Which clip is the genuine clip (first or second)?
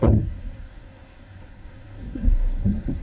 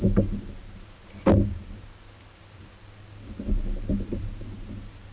second